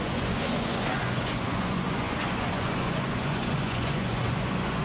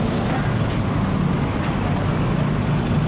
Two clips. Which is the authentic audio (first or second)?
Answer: second